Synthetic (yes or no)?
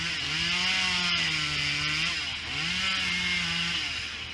no